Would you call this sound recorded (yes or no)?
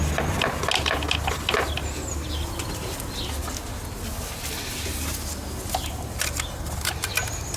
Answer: yes